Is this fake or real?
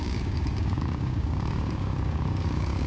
fake